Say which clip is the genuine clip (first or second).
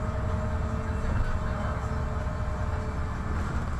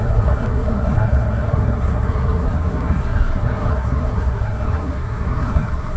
first